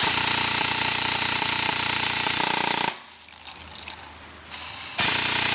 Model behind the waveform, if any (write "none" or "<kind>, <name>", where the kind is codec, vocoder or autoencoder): none